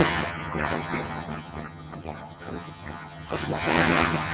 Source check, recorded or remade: remade